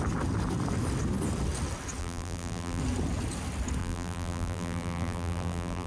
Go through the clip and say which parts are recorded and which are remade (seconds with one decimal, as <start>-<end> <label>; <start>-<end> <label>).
0.0-2.0 recorded; 2.0-2.8 remade; 2.8-3.8 recorded; 3.8-5.9 remade